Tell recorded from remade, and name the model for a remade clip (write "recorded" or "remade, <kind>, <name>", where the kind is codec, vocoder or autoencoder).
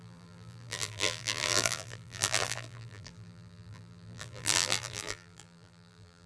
remade, vocoder, BigVGAN v2